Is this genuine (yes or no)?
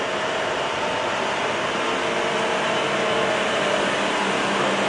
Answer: no